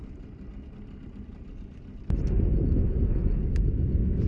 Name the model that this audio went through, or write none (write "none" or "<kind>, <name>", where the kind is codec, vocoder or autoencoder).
none